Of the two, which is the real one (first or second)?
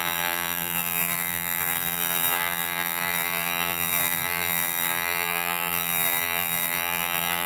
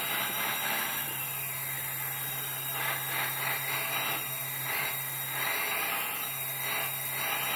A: second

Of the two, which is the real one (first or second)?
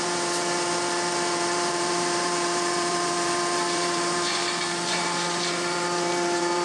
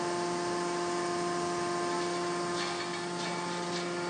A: second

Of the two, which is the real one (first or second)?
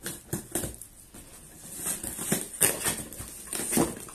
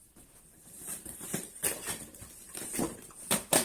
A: first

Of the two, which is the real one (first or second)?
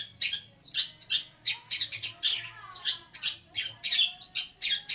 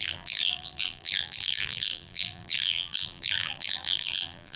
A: first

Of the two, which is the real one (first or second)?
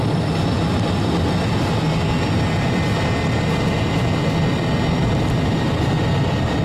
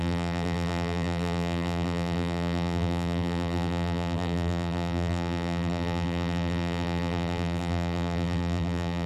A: first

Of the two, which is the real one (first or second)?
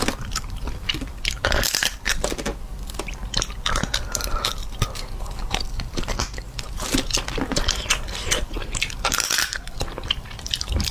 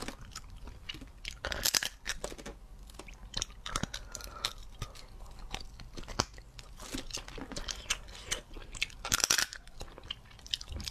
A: second